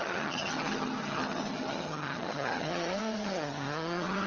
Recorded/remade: remade